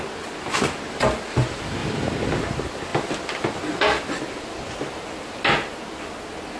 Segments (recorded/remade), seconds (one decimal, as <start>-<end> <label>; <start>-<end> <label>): 0.0-1.8 recorded; 1.8-2.5 remade; 2.5-6.6 recorded